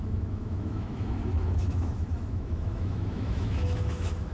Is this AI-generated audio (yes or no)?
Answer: yes